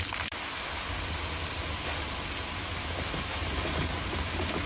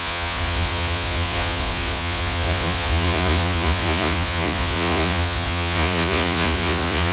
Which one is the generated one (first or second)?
second